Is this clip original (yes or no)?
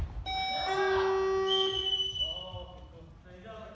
yes